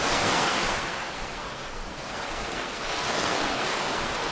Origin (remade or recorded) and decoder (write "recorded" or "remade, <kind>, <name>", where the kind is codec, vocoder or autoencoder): remade, codec, SNAC